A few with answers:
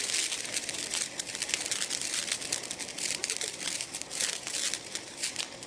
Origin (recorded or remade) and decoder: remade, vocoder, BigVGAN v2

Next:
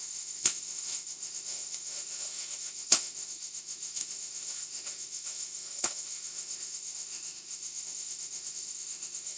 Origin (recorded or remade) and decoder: remade, autoencoder, DAC-VAE